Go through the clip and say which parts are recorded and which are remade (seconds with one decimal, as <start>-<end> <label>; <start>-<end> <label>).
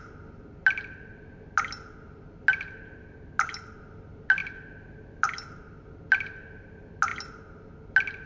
0.0-8.3 recorded